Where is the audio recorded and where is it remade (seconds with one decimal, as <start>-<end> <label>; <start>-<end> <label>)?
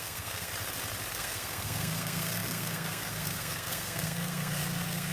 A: 0.0-0.5 remade; 0.5-1.1 recorded; 1.1-5.1 remade